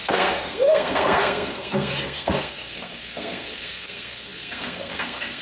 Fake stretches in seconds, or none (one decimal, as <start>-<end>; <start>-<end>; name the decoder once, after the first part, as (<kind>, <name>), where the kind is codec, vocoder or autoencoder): 0.0-5.4 (codec, SNAC)